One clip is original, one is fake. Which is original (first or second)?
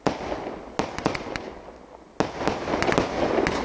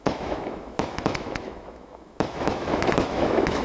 first